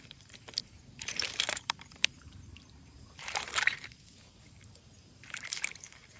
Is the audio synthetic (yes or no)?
yes